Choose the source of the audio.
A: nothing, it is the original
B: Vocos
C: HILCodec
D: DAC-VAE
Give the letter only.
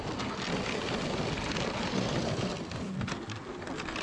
A